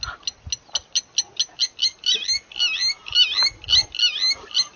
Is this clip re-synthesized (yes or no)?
no